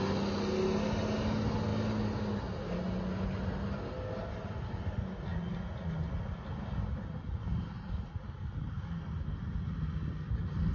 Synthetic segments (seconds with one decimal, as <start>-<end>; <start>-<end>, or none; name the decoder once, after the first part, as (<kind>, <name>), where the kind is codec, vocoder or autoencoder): none